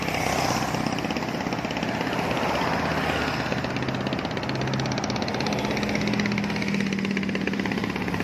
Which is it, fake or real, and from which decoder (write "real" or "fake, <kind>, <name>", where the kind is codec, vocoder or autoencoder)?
real